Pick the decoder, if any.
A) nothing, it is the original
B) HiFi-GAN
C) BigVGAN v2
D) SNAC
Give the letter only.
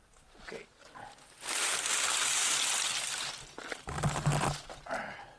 A